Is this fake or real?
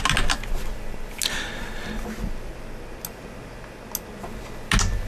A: real